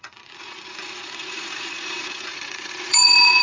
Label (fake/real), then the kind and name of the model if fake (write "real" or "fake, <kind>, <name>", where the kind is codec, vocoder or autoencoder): fake, vocoder, Vocos